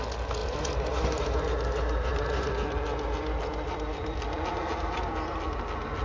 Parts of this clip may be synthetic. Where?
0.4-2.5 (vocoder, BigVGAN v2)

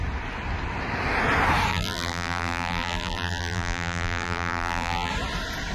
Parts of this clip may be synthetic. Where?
1.7-5.1 (vocoder, BigVGAN v2)

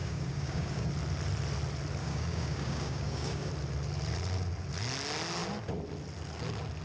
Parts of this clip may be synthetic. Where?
0.0-0.9 (codec, DAC); 2.0-3.5

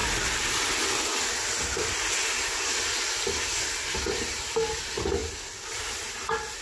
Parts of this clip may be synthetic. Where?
none

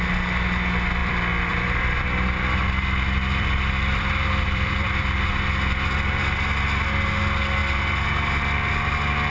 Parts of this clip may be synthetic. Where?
1.0-5.3 (vocoder, BigVGAN v2)

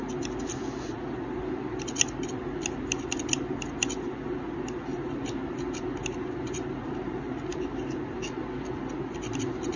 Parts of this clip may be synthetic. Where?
none